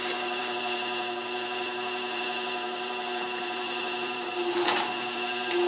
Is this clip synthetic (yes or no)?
yes